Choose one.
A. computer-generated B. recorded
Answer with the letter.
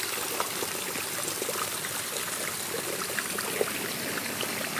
B